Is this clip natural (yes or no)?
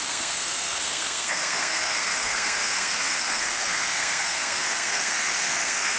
no